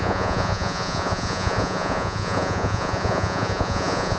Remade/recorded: remade